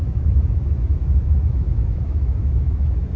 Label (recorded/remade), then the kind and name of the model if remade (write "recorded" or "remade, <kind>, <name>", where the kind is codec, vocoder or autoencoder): remade, autoencoder, DAC-VAE